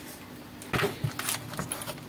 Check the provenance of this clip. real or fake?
real